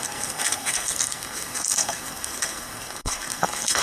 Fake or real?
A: fake